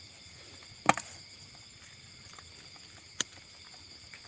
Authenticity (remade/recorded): recorded